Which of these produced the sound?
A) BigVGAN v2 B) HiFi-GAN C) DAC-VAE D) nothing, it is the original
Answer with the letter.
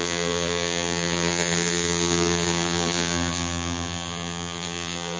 A